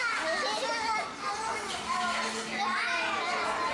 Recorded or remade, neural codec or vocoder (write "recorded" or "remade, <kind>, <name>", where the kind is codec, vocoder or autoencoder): recorded